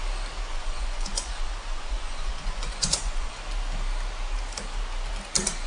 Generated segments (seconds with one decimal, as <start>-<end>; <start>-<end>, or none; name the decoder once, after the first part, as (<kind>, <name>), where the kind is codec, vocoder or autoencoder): 0.5-3.4 (vocoder, Vocos)